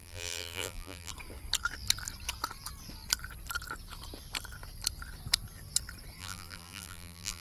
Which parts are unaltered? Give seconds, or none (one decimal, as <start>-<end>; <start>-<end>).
1.1-6.2